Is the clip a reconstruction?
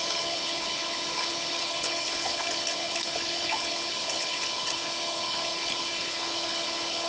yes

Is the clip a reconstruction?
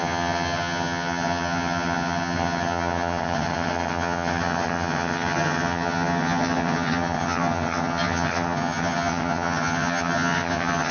yes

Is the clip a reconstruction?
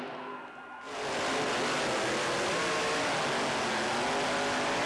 no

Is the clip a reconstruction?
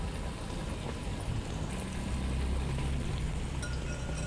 no